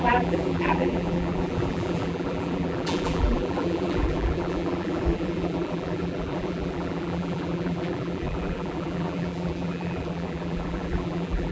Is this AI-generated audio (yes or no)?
yes